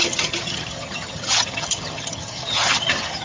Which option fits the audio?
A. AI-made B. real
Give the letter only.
A